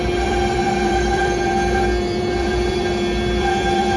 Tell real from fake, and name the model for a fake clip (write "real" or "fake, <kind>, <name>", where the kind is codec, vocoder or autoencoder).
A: fake, vocoder, BigVGAN v2